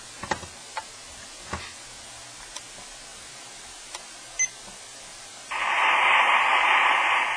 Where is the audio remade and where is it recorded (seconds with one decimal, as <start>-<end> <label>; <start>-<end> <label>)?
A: 0.0-7.4 recorded